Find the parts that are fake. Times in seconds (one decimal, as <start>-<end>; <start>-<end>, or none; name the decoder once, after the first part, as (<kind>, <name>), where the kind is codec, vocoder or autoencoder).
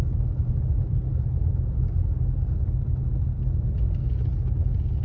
none